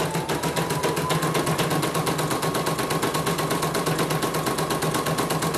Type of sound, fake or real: real